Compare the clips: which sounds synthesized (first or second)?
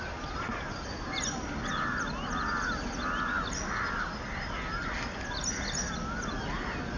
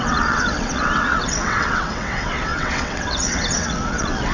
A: second